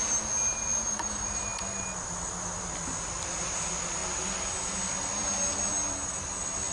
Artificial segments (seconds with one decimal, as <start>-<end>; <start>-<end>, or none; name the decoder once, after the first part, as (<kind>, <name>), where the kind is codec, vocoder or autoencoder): none